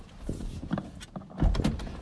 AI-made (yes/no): no